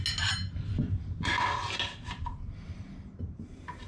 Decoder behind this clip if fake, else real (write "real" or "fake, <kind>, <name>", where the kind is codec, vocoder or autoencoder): real